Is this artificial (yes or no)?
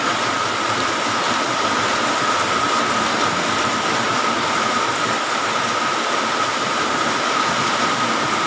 no